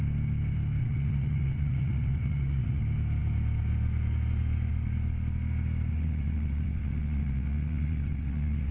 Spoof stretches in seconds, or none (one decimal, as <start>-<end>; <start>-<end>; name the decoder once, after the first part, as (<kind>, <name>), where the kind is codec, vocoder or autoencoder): 0.8-2.8 (vocoder, WaveNeXt); 5.9-8.7